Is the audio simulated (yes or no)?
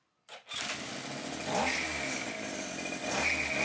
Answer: no